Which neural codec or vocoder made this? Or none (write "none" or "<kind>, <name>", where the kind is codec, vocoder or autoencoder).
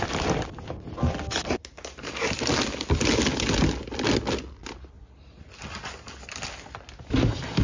none